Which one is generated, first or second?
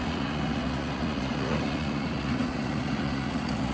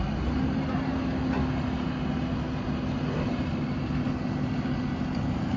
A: first